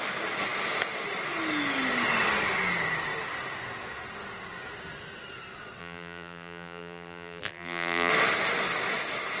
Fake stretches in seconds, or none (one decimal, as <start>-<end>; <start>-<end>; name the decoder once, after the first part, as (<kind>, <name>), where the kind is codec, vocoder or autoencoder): 5.8-8.1 (vocoder, BigVGAN v2)